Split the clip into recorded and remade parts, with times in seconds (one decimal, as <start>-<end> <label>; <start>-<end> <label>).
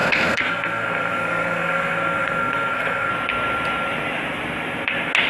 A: 0.0-3.1 remade; 3.1-5.3 recorded